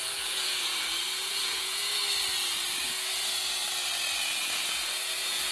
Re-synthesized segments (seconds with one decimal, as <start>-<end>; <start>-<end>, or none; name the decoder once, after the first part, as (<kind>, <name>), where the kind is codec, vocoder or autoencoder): 0.0-2.0 (vocoder, Vocos); 2.8-3.6; 4.2-5.5

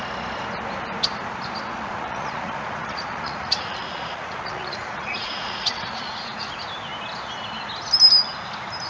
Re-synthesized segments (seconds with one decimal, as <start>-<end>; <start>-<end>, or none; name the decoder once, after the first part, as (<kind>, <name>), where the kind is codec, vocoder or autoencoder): 1.7-6.5 (vocoder, Vocos)

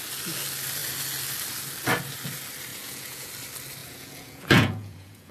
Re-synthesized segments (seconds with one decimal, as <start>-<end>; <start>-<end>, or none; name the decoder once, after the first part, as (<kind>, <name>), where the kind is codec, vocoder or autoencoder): 2.7-3.3 (vocoder, Vocos); 3.8-5.3

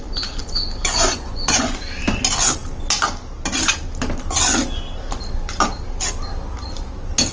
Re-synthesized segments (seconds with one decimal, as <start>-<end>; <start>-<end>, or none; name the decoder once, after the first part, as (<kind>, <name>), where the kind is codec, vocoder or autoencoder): 0.4-1.8 (vocoder, Vocos)

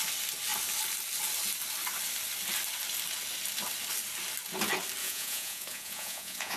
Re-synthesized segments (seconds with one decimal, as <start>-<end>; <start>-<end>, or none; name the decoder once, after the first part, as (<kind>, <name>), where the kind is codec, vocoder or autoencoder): 5.0-6.6 (vocoder, Vocos)

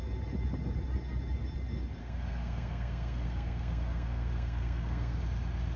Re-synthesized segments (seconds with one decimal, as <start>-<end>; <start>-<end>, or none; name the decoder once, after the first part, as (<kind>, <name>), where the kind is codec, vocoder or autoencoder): 2.0-5.2 (codec, SNAC)

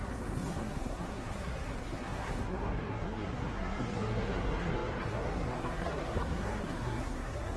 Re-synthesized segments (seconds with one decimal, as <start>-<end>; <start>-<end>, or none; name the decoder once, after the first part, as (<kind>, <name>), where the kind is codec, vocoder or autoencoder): 0.0-7.6 (codec, SNAC)

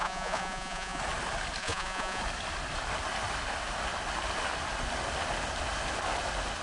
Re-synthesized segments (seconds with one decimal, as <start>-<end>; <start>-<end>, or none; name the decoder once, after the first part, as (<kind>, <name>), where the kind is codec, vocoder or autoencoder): 0.0-1.0 (vocoder, Vocos); 1.6-2.2